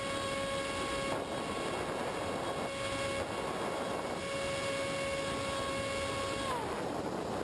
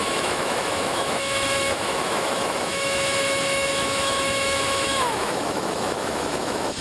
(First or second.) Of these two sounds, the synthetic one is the second